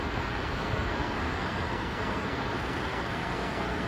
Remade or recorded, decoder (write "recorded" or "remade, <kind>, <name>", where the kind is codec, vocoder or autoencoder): remade, codec, SNAC